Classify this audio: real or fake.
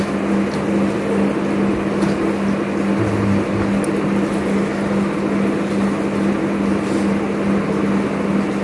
real